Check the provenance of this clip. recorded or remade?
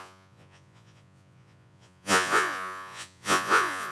remade